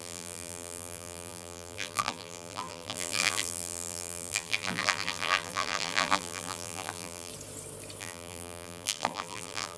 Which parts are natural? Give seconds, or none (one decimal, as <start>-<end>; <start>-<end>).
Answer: 7.3-8.0